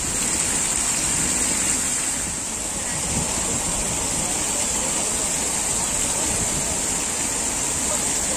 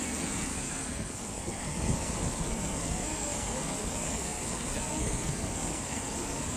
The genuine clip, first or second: first